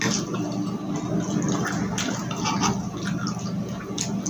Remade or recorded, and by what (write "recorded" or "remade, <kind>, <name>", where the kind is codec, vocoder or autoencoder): recorded